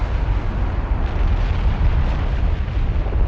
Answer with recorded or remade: recorded